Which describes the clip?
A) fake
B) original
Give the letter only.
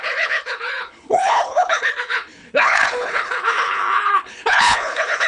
A